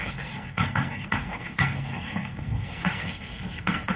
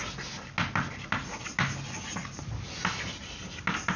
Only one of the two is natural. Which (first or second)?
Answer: second